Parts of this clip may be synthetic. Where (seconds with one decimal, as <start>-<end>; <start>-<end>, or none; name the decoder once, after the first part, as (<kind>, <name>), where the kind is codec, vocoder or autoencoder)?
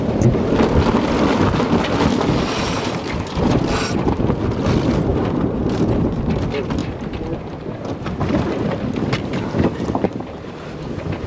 5.1-6.2 (vocoder, BigVGAN v2)